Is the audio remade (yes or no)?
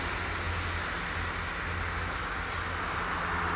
no